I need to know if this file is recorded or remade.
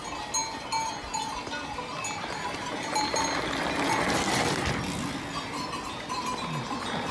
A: recorded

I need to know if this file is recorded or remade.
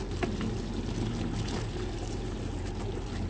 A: recorded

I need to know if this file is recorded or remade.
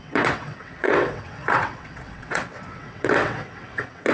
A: remade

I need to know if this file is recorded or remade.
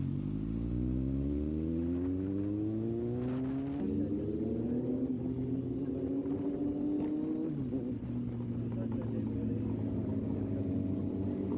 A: recorded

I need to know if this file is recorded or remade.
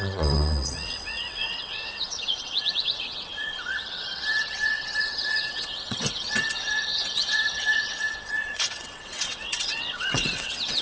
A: remade